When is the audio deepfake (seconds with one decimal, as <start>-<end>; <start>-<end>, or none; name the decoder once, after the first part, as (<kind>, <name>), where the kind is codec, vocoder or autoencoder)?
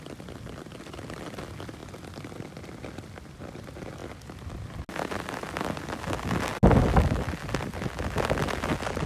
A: none